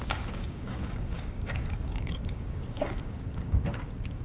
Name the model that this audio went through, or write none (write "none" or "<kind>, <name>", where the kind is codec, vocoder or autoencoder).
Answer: codec, DAC